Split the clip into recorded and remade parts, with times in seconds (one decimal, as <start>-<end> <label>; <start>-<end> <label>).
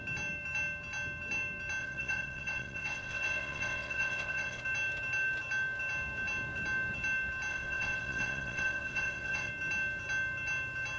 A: 0.0-1.8 recorded; 1.8-4.6 remade; 4.6-7.5 recorded; 7.5-9.5 remade; 9.5-11.0 recorded